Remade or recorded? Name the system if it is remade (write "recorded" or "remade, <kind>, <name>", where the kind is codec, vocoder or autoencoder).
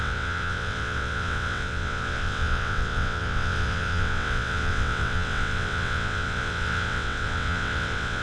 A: remade, vocoder, WaveNeXt